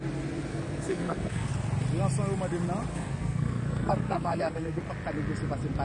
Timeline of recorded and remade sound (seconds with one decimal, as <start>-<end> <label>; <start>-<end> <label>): 0.0-0.5 recorded; 0.5-1.5 remade; 1.5-2.9 recorded; 2.9-4.8 remade; 4.8-5.8 recorded